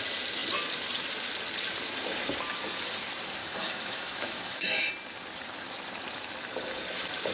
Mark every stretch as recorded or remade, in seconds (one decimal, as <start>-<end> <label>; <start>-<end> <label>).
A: 0.0-3.4 recorded; 3.4-4.9 remade; 4.9-7.3 recorded